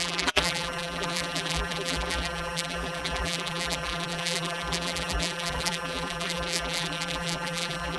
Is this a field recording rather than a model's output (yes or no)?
no